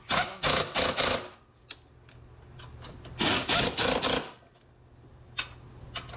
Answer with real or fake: real